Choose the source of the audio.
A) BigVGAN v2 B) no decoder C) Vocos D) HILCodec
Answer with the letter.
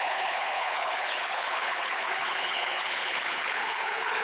D